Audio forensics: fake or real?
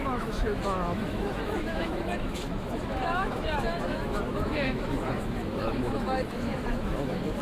fake